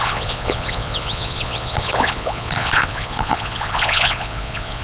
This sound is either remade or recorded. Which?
remade